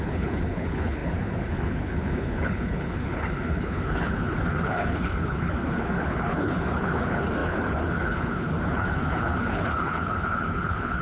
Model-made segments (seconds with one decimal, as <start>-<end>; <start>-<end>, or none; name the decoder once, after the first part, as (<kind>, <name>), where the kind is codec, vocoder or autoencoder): 0.0-11.0 (codec, HILCodec)